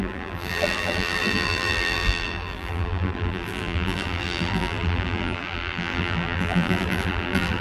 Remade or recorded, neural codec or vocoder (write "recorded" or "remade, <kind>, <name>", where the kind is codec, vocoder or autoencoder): remade, vocoder, BigVGAN v2